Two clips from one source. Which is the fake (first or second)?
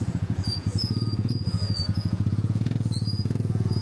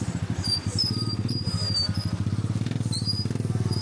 first